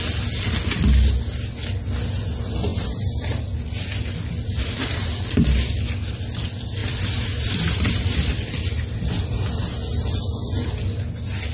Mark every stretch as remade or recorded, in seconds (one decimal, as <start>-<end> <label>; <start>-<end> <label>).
0.0-2.7 recorded; 2.7-3.4 remade; 3.4-6.8 recorded; 6.8-9.7 remade; 9.7-11.5 recorded